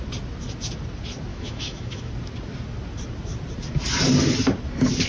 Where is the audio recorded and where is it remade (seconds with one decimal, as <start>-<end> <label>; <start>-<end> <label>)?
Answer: 0.0-1.3 recorded; 1.3-2.1 remade; 2.1-5.1 recorded